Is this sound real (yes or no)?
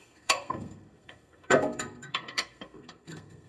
no